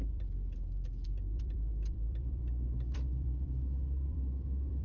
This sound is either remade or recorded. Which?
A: remade